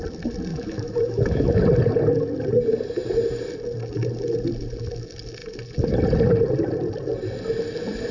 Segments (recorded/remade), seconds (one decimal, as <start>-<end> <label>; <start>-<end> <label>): 0.0-0.5 recorded; 0.5-1.6 remade; 1.6-8.1 recorded